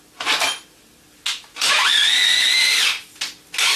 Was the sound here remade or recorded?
recorded